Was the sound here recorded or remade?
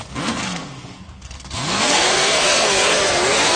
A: remade